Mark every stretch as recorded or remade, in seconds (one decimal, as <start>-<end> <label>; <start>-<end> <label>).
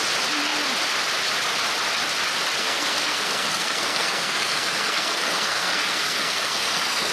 0.0-2.6 recorded; 2.6-7.1 remade